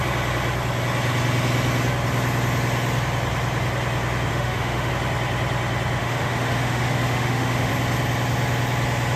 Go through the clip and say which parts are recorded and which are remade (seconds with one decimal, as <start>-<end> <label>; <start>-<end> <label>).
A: 0.0-4.3 recorded; 4.3-4.9 remade; 4.9-6.0 recorded; 6.0-7.7 remade; 7.7-9.2 recorded